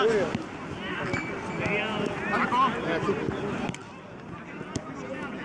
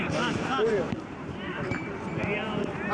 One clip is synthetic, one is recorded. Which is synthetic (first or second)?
second